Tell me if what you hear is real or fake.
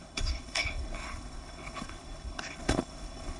fake